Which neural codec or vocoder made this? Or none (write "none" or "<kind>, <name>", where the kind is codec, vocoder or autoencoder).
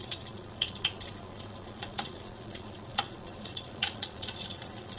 vocoder, Vocos